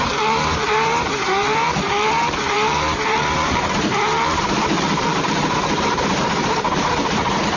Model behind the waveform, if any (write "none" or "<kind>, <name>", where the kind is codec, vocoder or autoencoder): vocoder, BigVGAN v2